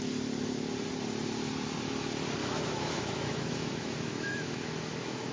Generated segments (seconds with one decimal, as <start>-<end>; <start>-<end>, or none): 2.4-5.3